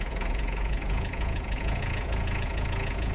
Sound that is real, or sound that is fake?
fake